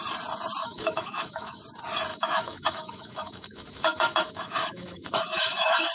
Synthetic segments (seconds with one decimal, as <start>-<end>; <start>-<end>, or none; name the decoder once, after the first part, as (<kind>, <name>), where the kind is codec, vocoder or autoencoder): 0.6-1.6 (autoencoder, DAC-VAE); 2.1-5.9

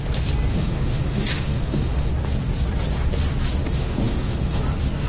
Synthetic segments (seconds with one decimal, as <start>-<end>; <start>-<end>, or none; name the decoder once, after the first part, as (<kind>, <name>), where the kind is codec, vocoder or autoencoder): 0.5-2.1 (autoencoder, DAC-VAE); 3.6-4.6